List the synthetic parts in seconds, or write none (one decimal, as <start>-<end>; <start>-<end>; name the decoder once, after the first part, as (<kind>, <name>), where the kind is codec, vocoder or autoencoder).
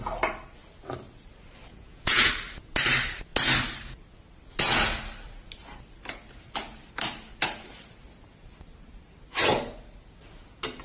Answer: 1.7-2.3 (vocoder, Vocos)